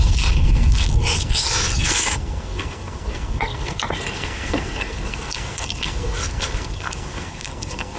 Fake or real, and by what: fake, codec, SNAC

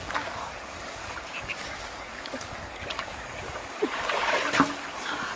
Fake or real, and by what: fake, codec, DAC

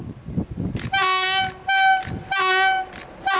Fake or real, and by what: real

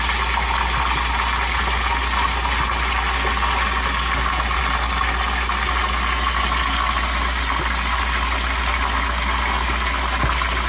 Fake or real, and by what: real